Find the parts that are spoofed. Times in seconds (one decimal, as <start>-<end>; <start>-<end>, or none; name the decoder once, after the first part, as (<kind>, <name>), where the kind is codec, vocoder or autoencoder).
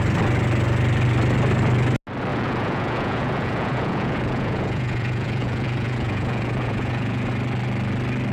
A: 2.3-7.3 (vocoder, Vocos)